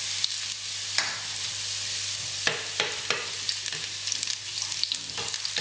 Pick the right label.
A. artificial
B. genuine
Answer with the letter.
B